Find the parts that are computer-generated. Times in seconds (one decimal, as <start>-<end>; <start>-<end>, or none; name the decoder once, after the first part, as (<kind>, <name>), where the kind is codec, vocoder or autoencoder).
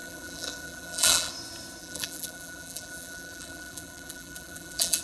0.0-1.3 (vocoder, BigVGAN v2); 1.8-5.0